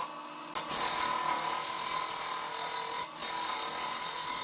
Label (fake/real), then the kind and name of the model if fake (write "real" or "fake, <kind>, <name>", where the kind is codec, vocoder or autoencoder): real